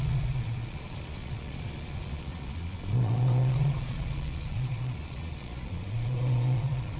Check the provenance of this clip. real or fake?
fake